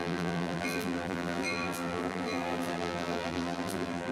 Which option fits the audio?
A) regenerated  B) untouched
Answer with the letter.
A